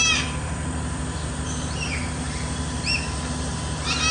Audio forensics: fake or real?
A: fake